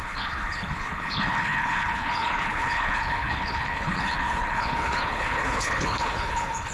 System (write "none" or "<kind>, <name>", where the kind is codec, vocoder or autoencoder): codec, HILCodec